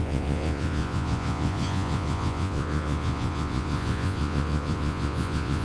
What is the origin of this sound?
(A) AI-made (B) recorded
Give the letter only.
A